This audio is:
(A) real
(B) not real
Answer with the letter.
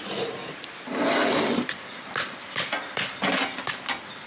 B